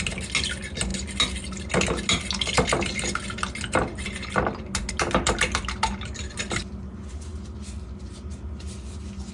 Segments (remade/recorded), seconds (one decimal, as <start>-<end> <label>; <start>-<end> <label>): 0.0-9.3 recorded